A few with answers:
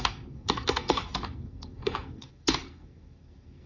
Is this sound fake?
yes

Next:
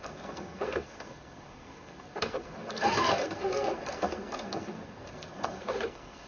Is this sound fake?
yes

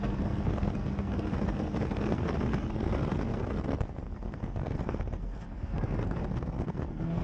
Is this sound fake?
yes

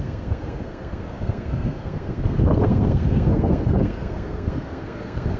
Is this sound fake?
yes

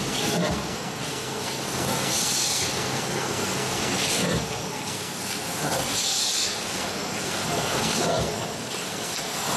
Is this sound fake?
yes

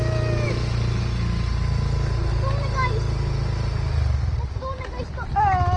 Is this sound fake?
no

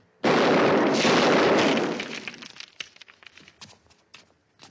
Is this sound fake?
no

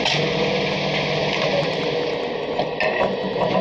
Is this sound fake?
no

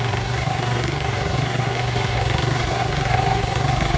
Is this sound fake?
yes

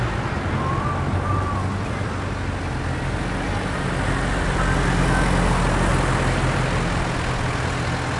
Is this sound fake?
no